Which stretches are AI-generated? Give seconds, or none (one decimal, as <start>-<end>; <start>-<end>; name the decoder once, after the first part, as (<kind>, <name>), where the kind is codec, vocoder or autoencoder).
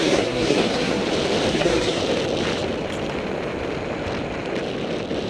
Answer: 0.0-1.0 (codec, SNAC); 1.5-2.0